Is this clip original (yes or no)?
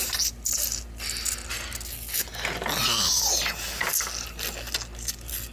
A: yes